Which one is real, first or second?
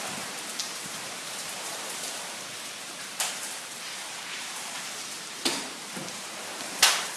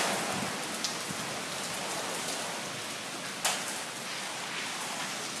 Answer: second